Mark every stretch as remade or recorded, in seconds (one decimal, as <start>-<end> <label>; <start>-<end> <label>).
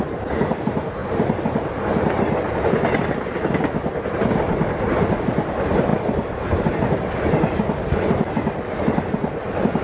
0.0-9.8 recorded